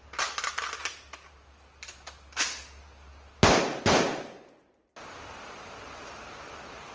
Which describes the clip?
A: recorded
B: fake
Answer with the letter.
A